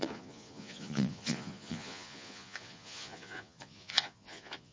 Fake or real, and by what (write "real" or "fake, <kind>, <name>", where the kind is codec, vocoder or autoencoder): fake, vocoder, Vocos